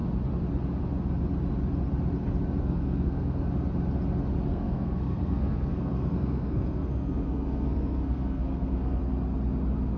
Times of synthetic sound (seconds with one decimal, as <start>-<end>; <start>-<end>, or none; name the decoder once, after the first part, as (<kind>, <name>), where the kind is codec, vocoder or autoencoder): 2.6-3.4 (codec, SNAC); 4.5-9.0